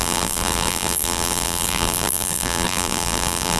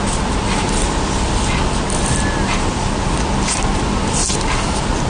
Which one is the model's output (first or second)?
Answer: first